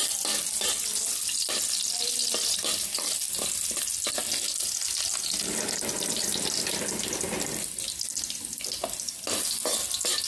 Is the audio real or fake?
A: real